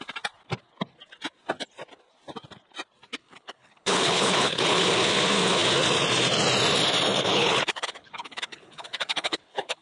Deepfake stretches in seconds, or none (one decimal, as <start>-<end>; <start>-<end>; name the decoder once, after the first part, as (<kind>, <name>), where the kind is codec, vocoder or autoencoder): 3.2-4.9 (codec, HILCodec); 7.3-9.8